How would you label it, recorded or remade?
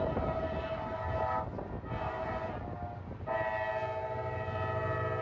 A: recorded